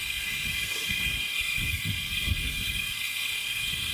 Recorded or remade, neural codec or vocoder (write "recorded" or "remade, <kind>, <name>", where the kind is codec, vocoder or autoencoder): remade, codec, SNAC